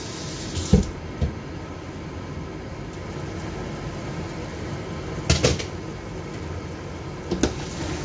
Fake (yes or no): no